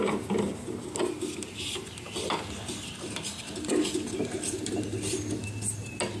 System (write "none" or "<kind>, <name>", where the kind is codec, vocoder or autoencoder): none